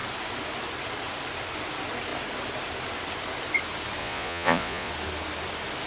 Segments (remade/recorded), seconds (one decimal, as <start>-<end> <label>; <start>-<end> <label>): 0.0-4.0 recorded; 4.0-4.9 remade; 4.9-5.9 recorded